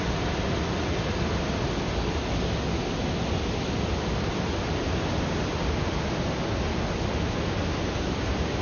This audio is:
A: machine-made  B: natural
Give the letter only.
B